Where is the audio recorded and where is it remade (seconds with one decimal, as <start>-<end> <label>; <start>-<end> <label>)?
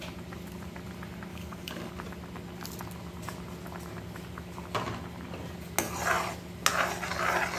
0.0-1.3 recorded; 1.3-1.9 remade; 1.9-7.6 recorded